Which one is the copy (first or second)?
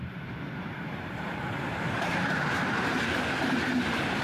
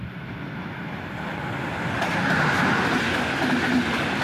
first